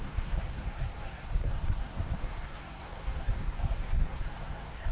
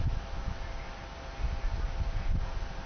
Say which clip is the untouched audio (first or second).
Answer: second